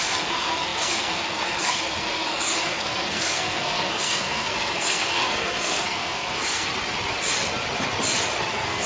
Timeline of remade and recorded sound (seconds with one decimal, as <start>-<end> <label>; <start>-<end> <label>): 0.0-6.7 remade; 6.7-8.5 recorded; 8.5-8.9 remade